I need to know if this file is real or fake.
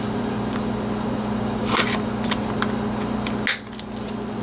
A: real